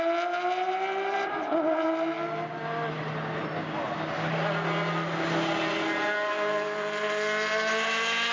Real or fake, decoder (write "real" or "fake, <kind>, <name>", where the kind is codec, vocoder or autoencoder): real